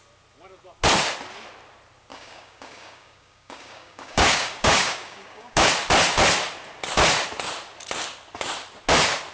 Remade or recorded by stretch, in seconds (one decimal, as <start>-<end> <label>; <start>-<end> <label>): 0.0-2.1 recorded; 2.1-5.7 remade; 5.7-9.3 recorded